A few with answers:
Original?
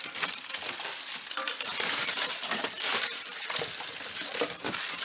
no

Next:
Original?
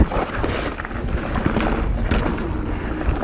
yes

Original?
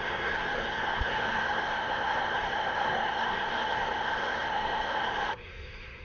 no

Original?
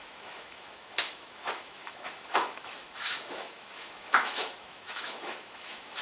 no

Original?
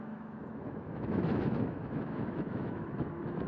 no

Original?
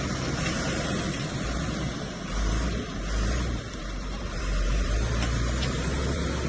no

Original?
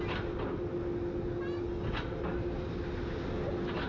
yes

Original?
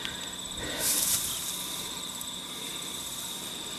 yes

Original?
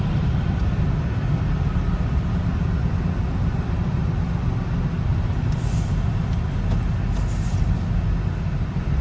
yes